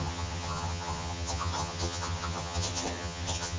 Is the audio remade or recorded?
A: remade